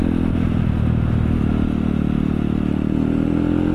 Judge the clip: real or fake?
real